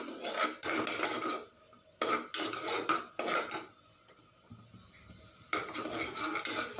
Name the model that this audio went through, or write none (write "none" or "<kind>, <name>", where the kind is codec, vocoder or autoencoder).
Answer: none